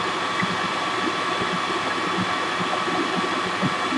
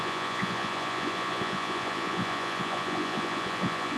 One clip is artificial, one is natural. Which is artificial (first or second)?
second